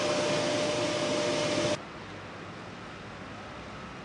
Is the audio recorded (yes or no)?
yes